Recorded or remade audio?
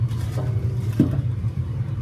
recorded